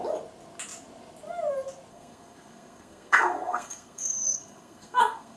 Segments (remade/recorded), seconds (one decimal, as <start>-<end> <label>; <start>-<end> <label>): 0.0-1.9 recorded; 1.9-5.4 remade